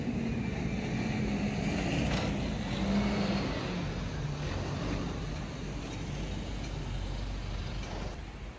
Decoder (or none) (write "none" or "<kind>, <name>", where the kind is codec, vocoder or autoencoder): none